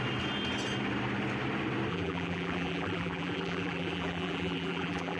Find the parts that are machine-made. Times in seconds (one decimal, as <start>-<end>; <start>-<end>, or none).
1.9-5.2